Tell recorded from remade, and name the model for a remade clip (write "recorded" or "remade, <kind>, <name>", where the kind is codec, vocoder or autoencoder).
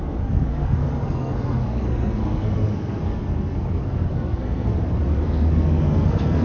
remade, codec, SNAC